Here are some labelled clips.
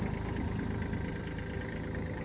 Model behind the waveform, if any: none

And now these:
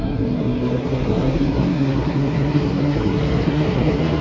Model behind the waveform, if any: codec, SNAC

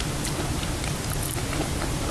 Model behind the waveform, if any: none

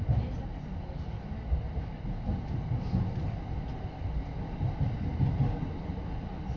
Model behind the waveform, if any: none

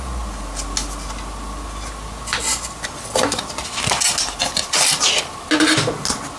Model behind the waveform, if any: none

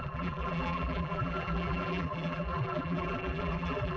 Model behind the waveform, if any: vocoder, BigVGAN v2